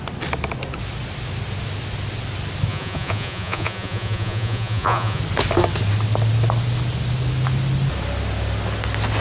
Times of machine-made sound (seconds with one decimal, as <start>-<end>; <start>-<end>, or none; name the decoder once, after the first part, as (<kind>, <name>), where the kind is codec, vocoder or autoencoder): 2.7-5.2 (vocoder, Vocos)